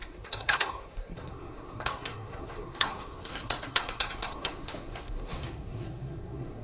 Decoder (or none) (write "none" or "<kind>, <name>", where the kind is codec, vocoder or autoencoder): codec, SNAC